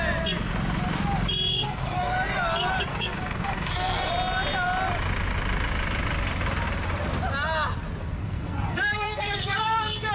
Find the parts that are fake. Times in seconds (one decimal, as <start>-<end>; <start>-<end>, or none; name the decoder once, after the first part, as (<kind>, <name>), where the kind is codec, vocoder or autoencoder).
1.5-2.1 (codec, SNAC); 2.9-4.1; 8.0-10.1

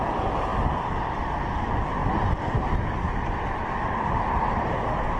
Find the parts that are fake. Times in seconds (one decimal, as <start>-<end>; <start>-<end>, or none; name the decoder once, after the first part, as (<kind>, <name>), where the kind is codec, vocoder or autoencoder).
none

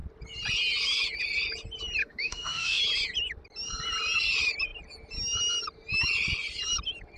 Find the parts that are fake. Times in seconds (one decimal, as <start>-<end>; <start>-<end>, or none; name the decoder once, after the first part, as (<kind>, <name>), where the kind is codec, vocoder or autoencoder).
2.0-2.8 (autoencoder, DAC-VAE)